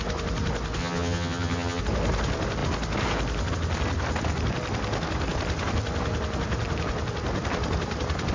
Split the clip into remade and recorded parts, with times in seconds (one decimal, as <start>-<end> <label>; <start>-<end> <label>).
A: 0.0-0.8 recorded; 0.8-1.8 remade; 1.8-8.3 recorded